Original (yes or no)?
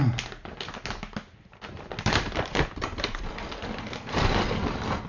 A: yes